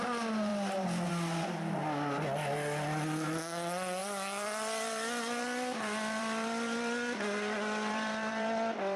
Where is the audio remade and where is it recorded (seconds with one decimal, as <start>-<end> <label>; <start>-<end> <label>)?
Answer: 0.0-4.0 recorded; 4.0-9.0 remade